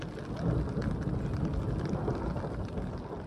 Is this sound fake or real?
real